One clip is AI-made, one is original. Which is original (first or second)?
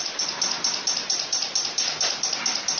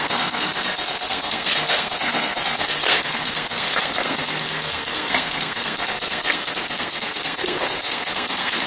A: first